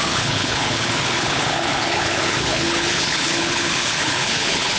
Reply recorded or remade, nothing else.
remade